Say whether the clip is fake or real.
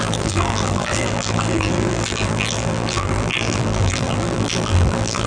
fake